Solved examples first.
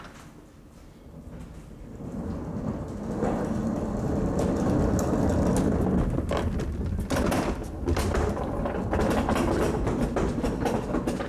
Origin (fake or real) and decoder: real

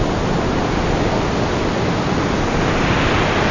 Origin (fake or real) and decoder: real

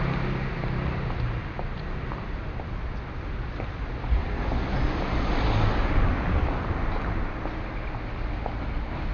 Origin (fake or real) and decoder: real